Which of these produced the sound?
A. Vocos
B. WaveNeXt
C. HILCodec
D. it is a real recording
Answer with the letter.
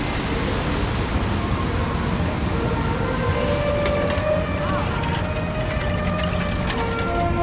D